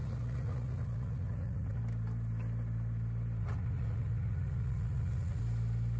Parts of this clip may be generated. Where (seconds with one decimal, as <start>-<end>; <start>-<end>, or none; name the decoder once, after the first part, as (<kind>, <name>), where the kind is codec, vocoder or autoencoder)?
0.0-1.8 (vocoder, Vocos); 3.4-5.4